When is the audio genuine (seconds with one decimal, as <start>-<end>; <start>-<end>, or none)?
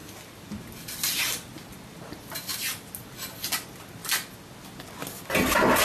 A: 0.0-5.8